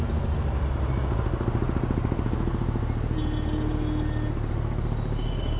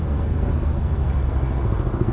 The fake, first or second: second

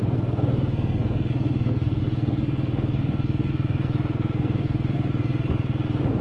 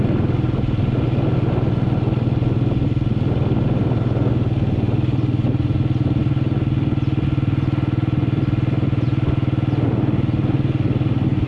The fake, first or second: first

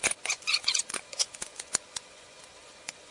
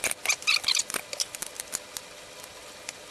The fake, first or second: first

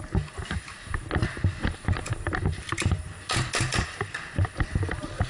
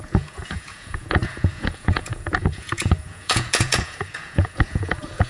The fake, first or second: second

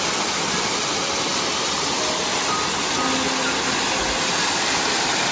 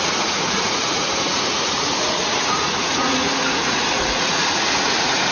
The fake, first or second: second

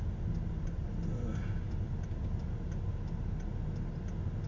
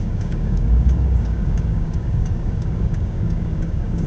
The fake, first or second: second